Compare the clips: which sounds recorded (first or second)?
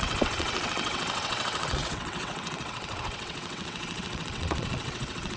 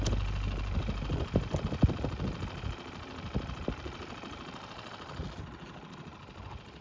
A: second